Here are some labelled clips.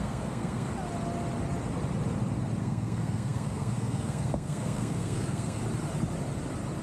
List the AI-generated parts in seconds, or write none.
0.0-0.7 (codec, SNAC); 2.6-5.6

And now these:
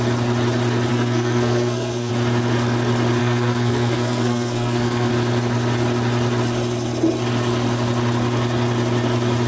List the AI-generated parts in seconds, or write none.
0.9-2.1 (codec, SNAC); 3.2-5.1

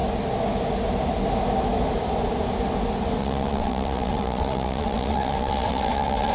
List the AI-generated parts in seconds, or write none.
3.2-6.3 (vocoder, WaveNeXt)

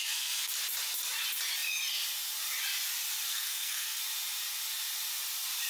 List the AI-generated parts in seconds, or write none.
0.0-0.5 (codec, SNAC); 3.3-4.0

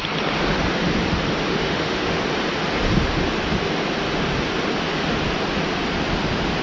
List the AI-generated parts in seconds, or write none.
1.5-2.2 (autoencoder, DAC-VAE)

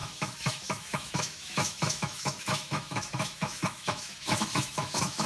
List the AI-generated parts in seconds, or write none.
0.0-5.3 (autoencoder, DAC-VAE)

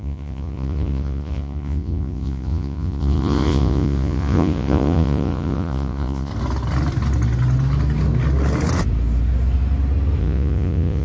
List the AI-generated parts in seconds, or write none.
0.0-6.3 (vocoder, Vocos); 10.2-11.0

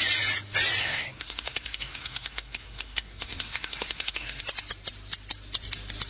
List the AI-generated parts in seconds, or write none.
0.8-4.4 (codec, SNAC)